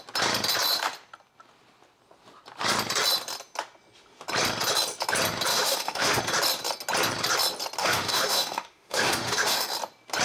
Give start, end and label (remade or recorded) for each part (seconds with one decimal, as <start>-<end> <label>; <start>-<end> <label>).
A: 0.0-5.5 recorded; 5.5-6.2 remade; 6.2-7.8 recorded; 7.8-9.7 remade; 9.7-10.2 recorded